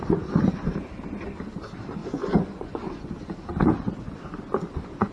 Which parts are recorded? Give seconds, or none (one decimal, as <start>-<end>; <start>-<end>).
0.0-2.0; 3.1-5.1